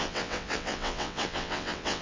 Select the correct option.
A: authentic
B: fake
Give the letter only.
B